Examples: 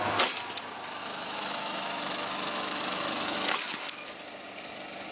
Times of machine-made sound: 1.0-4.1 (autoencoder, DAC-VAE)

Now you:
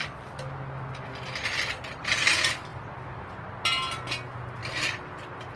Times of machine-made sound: 2.7-3.3 (vocoder, BigVGAN v2)

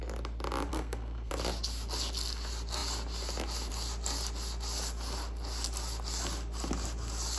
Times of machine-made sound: 0.7-1.3 (codec, SNAC)

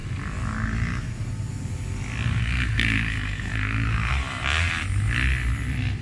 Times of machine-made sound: 2.4-4.1 (codec, SNAC)